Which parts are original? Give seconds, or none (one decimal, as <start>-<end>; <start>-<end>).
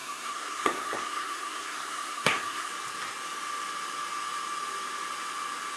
2.7-5.8